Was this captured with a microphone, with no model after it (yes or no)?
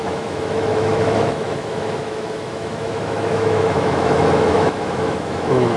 no